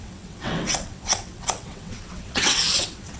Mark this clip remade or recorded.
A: remade